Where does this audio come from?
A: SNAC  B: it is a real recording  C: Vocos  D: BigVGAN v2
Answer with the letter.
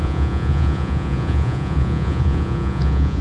C